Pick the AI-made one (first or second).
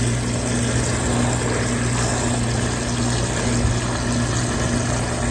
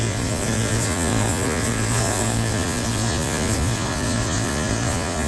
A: second